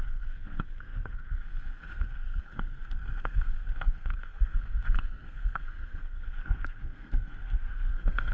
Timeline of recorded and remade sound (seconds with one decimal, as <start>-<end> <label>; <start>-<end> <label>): 0.0-8.3 remade